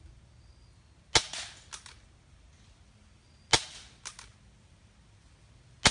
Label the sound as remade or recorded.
recorded